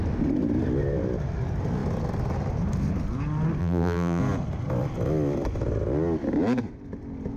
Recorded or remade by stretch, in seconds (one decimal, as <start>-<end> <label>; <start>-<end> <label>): 0.0-3.6 recorded; 3.6-4.2 remade; 4.2-7.4 recorded